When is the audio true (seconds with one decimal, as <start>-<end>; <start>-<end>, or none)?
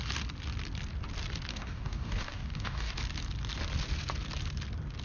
0.0-1.5; 3.0-5.0